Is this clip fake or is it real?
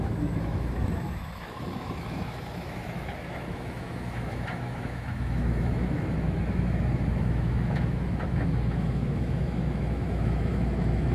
fake